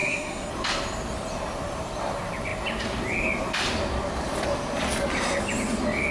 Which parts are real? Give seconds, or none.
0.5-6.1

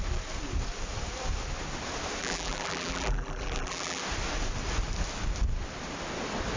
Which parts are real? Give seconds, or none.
0.0-2.2; 4.0-6.6